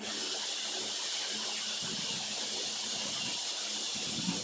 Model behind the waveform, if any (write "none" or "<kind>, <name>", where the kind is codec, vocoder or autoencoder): none